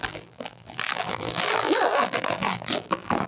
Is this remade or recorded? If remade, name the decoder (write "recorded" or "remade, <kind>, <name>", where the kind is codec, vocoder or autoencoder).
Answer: remade, vocoder, BigVGAN v2